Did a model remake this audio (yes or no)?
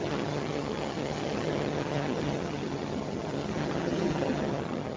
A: yes